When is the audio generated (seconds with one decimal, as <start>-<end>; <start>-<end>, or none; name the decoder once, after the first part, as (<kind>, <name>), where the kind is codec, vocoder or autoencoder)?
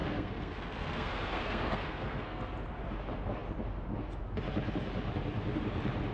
0.0-2.5 (codec, SNAC)